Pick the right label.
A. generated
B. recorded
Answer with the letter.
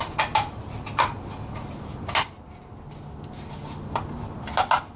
B